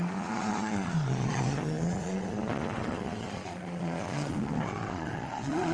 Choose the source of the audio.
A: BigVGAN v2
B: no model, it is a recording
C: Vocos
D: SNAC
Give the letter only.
C